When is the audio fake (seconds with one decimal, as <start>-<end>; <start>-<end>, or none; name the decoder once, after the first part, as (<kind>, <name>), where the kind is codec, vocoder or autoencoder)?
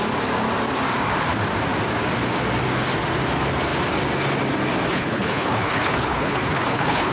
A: 4.9-7.1 (codec, HILCodec)